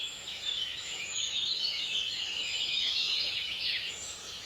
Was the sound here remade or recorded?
remade